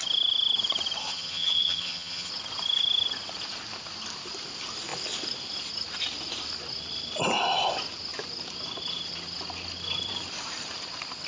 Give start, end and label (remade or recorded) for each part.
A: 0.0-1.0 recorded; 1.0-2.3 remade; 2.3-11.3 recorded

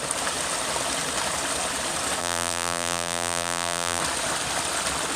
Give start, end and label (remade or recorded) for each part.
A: 0.0-2.2 recorded; 2.2-4.0 remade; 4.0-5.2 recorded

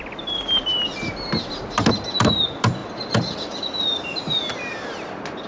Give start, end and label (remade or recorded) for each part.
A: 0.0-5.5 recorded

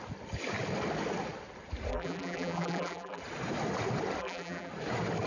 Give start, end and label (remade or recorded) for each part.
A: 0.0-1.9 recorded; 1.9-3.2 remade; 3.2-4.2 recorded; 4.2-4.7 remade; 4.7-5.3 recorded

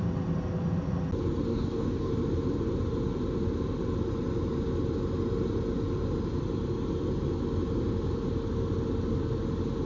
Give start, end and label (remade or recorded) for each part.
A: 0.0-1.5 recorded; 1.5-2.1 remade; 2.1-9.9 recorded

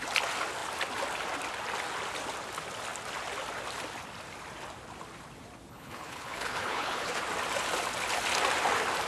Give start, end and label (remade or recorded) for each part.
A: 0.0-5.7 recorded; 5.7-7.2 remade; 7.2-9.1 recorded